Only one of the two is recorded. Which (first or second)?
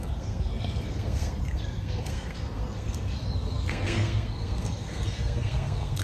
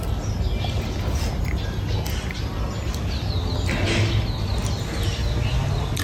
second